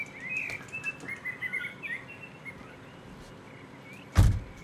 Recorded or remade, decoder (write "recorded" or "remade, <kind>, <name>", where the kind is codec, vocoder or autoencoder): recorded